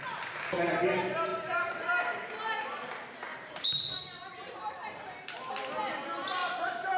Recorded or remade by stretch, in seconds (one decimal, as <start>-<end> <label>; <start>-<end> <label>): 0.0-3.3 recorded; 3.3-5.0 remade; 5.0-6.4 recorded; 6.4-7.0 remade